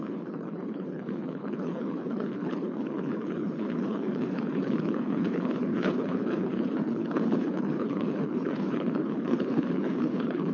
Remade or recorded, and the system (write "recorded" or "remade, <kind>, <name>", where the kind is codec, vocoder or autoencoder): remade, codec, HILCodec